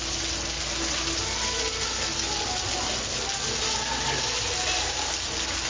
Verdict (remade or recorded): recorded